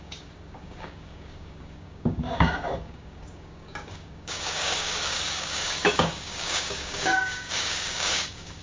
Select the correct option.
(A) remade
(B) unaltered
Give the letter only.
A